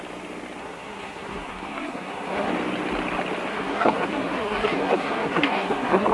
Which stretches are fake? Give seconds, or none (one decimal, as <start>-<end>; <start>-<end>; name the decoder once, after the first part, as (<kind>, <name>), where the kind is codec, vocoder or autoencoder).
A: 0.6-2.5 (codec, SNAC); 3.5-6.1